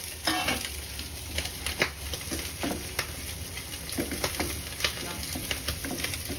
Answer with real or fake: real